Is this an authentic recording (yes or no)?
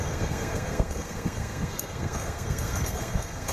no